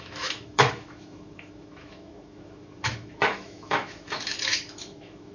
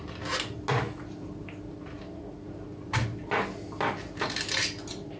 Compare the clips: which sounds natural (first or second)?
second